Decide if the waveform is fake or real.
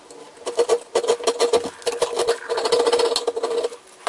real